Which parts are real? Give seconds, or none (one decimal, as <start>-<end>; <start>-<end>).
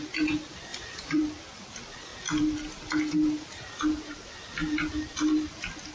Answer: 0.0-0.7; 1.2-5.9